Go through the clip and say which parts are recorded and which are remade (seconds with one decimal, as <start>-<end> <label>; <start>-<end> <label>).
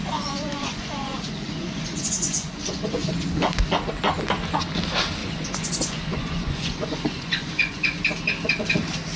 0.0-3.1 remade; 3.1-5.2 recorded; 5.2-8.0 remade; 8.0-9.2 recorded